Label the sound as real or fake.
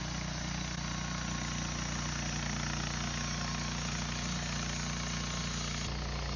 real